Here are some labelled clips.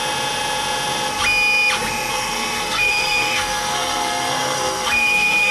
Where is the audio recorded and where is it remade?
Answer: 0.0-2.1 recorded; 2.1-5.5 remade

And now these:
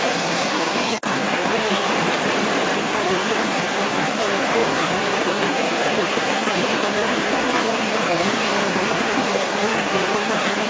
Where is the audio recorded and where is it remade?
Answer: 0.0-1.9 remade; 1.9-2.8 recorded; 2.8-10.7 remade

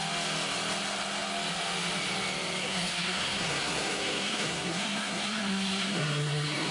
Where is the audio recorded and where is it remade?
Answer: 0.0-2.6 recorded; 2.6-6.7 remade